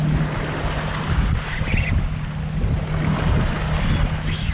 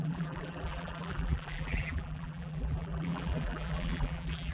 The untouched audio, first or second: first